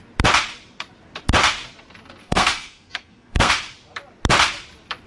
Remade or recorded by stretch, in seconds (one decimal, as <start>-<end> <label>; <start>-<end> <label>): 0.0-2.2 recorded; 2.2-3.5 remade; 3.5-5.1 recorded